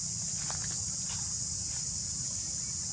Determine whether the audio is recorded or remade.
recorded